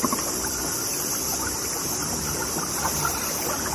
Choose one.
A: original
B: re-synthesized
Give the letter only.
B